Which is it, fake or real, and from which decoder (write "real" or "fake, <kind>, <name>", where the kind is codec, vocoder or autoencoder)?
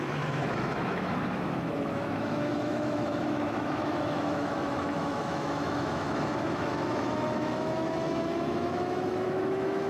fake, autoencoder, DAC-VAE